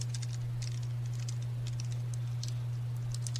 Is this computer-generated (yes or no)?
no